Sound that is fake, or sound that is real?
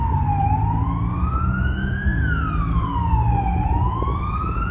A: real